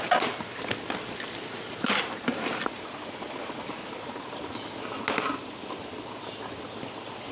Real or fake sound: real